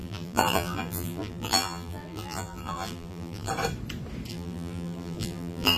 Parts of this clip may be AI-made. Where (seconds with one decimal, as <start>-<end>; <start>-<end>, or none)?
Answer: 0.0-3.5; 4.3-5.8